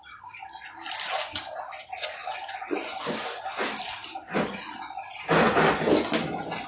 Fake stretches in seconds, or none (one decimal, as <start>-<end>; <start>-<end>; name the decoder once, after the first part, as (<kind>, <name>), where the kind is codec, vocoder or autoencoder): 2.1-3.4 (vocoder, Vocos)